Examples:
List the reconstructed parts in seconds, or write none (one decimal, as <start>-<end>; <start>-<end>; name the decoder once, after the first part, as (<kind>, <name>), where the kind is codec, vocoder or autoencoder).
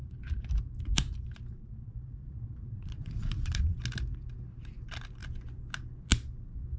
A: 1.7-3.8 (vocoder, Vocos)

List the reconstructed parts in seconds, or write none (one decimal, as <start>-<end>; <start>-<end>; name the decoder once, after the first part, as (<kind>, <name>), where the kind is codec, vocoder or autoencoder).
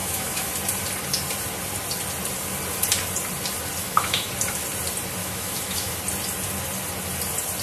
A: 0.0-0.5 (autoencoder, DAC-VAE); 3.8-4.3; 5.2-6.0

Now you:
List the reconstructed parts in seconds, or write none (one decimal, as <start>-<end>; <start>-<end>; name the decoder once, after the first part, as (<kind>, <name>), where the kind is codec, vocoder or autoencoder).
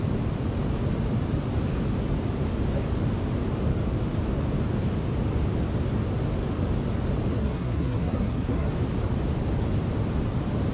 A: 7.3-8.7 (codec, SNAC)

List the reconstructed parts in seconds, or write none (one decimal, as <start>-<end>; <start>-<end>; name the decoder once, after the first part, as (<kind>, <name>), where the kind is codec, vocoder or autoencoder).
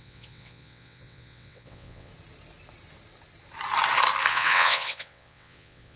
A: 0.0-2.1 (vocoder, WaveNeXt); 4.3-6.0